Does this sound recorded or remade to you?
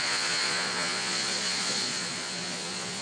remade